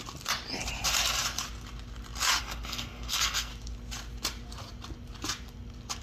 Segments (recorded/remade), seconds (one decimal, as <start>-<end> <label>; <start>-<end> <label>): 0.0-2.4 recorded; 2.4-3.5 remade; 3.5-6.0 recorded